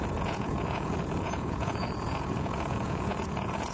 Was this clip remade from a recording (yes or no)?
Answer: yes